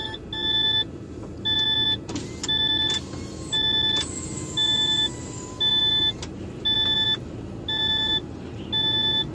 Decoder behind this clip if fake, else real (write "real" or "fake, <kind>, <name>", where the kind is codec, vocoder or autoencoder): real